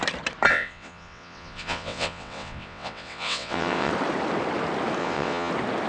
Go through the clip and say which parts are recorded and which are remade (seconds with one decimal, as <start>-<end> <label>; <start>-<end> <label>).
0.0-0.5 recorded; 0.5-3.9 remade; 3.9-5.0 recorded; 5.0-5.5 remade; 5.5-5.9 recorded